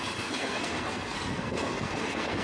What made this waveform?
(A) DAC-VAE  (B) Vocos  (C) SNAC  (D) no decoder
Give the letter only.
C